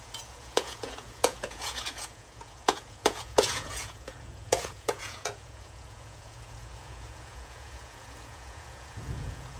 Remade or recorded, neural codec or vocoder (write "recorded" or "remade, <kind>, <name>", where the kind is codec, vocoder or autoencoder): remade, vocoder, Vocos